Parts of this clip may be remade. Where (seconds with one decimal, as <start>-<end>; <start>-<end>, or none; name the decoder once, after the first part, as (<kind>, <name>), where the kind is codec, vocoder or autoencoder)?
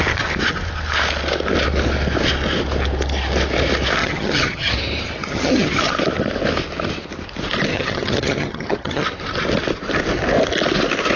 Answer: 4.0-4.7 (vocoder, HiFi-GAN); 5.2-5.9; 7.7-9.0